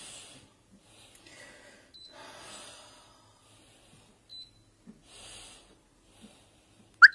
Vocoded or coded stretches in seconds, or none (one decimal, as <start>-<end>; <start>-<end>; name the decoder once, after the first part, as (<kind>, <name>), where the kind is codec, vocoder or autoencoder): none